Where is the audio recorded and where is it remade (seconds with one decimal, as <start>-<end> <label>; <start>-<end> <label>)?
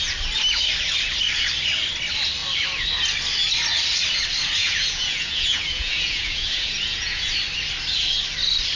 0.0-4.6 recorded; 4.6-7.3 remade; 7.3-8.8 recorded